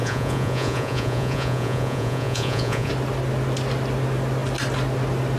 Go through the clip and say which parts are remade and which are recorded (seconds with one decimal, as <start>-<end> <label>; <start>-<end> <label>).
0.0-2.9 remade; 2.9-5.4 recorded